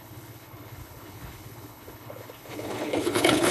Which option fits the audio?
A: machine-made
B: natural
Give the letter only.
A